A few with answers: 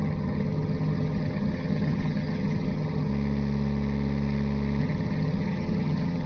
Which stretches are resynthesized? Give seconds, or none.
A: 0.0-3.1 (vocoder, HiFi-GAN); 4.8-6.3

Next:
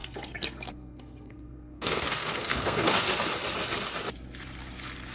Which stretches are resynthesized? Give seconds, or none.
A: 0.0-3.1 (codec, SNAC)

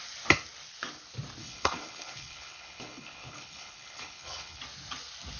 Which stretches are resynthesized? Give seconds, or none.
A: 1.4-4.6 (codec, HILCodec)